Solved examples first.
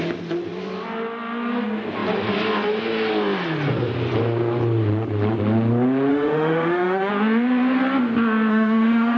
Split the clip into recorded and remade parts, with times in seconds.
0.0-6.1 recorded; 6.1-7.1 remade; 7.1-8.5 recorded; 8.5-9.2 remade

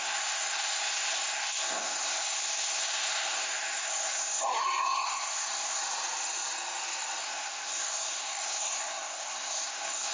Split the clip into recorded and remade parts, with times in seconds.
0.0-5.8 remade; 5.8-7.2 recorded; 7.2-10.1 remade